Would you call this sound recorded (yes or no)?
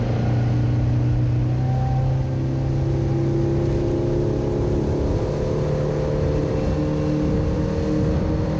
yes